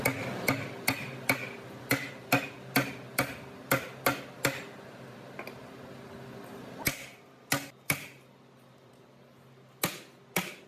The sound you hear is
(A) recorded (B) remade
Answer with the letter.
A